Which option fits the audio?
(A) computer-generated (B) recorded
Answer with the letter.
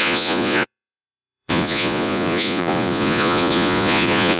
A